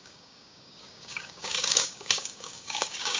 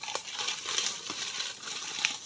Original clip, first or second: second